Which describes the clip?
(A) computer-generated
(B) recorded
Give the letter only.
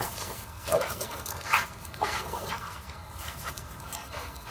A